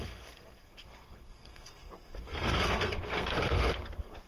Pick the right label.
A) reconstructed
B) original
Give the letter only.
A